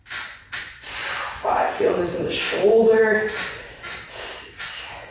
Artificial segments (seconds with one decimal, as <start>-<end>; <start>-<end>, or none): 0.0-5.1

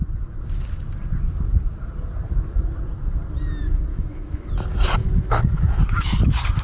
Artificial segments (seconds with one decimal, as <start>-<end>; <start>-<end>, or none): 3.9-4.5; 5.0-5.8

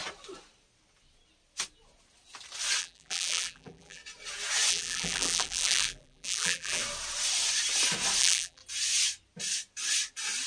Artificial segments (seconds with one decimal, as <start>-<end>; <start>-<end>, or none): 2.8-4.0; 4.7-6.8; 8.2-8.6

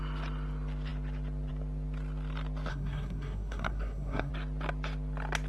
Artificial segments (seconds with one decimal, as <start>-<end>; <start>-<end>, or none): 2.7-4.3

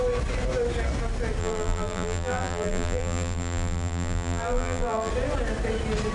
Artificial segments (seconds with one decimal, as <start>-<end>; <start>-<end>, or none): 1.4-5.1